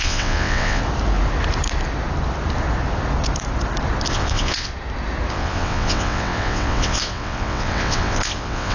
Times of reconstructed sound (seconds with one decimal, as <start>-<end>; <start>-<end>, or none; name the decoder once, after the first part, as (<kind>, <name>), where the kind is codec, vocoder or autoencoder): 0.0-0.8 (vocoder, WaveNeXt); 4.1-4.7; 5.3-8.7